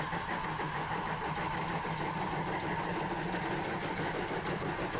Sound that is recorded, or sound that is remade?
recorded